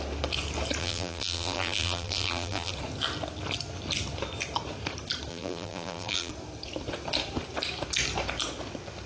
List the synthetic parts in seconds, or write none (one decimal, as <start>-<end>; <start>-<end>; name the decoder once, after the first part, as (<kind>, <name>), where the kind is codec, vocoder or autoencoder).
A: 0.8-2.7 (vocoder, BigVGAN v2); 5.3-6.3